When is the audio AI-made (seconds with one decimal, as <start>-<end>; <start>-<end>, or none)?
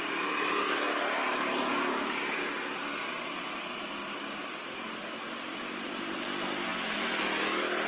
4.0-6.2